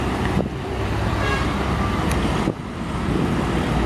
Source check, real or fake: real